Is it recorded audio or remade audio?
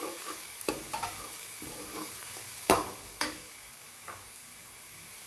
remade